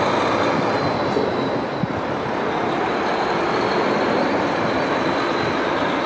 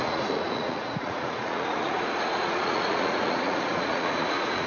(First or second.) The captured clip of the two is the first